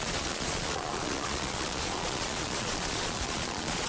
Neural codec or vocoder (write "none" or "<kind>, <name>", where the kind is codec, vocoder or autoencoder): vocoder, Vocos